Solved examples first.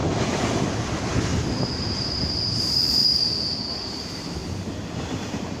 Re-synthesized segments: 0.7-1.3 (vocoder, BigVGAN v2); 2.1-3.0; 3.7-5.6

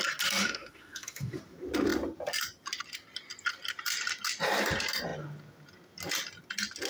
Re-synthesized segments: 0.4-1.4 (autoencoder, DAC-VAE)

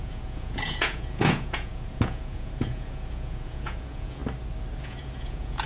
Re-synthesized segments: 0.0-4.2 (vocoder, Vocos); 4.8-5.7

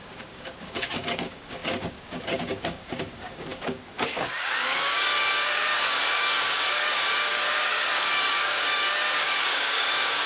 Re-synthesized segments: 0.0-10.3 (codec, DAC)

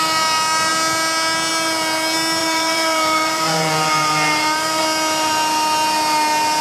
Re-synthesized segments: 2.4-4.8 (vocoder, BigVGAN v2)

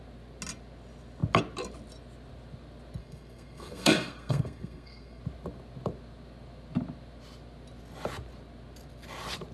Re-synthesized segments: 3.0-5.2 (codec, SNAC)

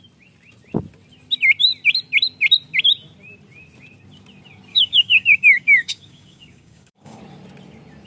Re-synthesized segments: 4.7-7.2 (codec, DAC)